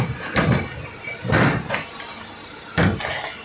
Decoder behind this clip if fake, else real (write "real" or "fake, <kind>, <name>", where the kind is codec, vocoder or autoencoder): real